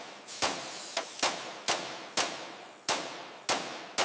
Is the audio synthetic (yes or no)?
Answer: no